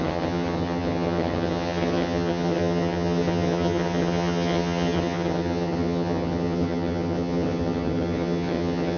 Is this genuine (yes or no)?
no